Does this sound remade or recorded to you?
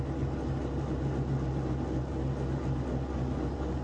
recorded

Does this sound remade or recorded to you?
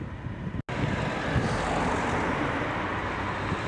recorded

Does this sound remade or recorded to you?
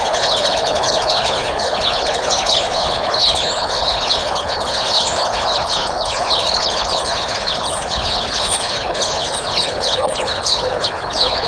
remade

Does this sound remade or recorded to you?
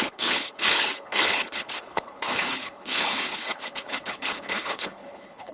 remade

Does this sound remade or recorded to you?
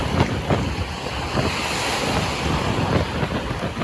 recorded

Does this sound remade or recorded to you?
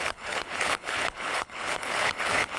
remade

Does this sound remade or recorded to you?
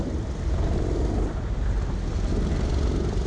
recorded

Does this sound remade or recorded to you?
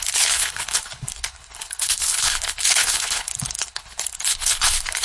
remade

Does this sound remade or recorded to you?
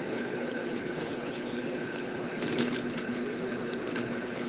remade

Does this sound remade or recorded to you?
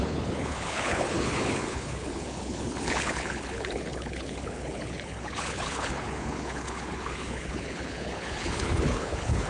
remade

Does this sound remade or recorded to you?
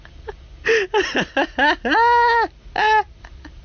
recorded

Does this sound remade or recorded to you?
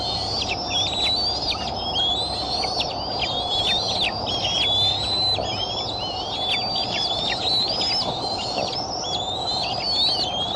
recorded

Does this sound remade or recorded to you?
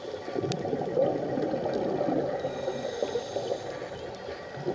recorded